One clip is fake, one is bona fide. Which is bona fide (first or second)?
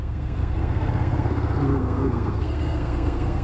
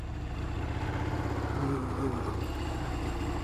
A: second